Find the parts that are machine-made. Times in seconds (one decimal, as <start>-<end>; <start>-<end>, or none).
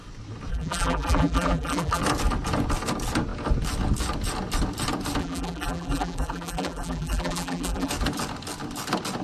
0.5-2.0; 5.2-7.9